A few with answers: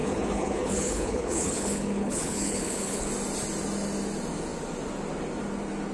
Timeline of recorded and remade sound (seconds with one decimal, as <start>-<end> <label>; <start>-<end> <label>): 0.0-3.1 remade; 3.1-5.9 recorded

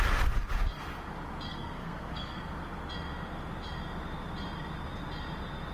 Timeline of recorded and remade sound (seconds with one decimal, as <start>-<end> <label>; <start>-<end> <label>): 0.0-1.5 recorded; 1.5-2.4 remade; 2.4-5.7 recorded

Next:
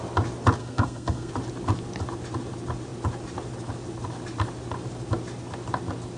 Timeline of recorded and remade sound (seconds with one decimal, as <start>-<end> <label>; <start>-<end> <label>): 0.0-0.6 recorded; 0.6-1.3 remade; 1.3-6.2 recorded